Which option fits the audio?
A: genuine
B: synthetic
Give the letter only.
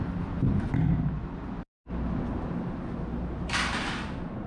A